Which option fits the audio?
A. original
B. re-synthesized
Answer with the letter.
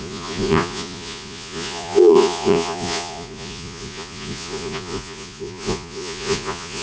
B